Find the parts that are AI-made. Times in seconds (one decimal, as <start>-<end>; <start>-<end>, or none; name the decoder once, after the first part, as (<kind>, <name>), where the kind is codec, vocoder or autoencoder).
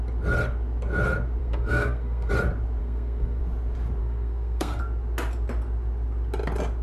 1.4-2.3 (codec, SNAC); 2.8-3.4; 4.0-4.8